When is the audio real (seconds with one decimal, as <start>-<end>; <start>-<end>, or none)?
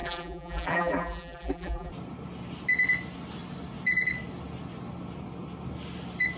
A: 1.9-6.4